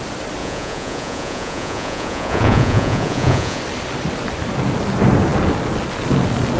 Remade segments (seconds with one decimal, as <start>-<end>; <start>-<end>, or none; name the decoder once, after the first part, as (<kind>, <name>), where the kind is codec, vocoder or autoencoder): 0.4-3.6 (vocoder, Vocos)